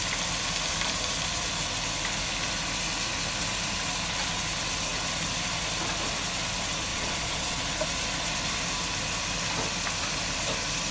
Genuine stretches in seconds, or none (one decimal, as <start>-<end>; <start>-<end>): 0.0-6.9; 7.6-10.9